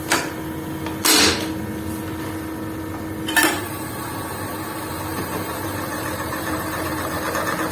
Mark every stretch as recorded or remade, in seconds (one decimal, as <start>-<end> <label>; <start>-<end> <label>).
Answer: 0.0-3.4 recorded; 3.4-3.9 remade; 3.9-5.1 recorded; 5.1-7.2 remade; 7.2-7.7 recorded